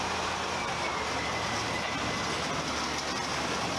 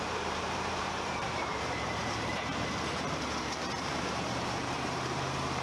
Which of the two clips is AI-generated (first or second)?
second